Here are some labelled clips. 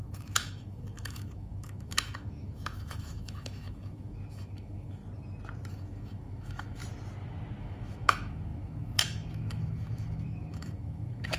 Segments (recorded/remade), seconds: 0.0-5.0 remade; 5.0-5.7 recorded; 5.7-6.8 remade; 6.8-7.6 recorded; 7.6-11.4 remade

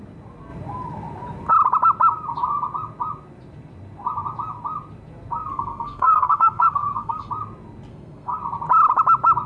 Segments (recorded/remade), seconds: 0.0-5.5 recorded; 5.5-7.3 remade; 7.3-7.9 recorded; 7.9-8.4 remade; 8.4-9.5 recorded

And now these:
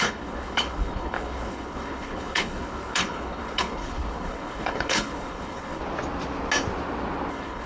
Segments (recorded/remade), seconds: 0.0-5.8 remade; 5.8-7.3 recorded; 7.3-7.7 remade

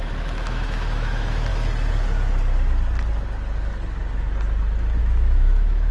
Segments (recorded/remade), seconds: 0.0-1.5 remade; 1.5-5.0 recorded; 5.0-5.9 remade